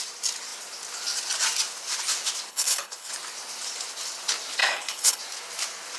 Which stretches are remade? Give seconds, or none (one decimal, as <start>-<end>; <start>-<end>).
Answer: 2.5-3.1; 4.6-5.2